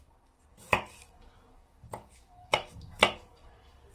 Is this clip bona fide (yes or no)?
no